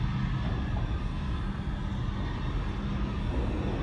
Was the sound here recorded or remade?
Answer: recorded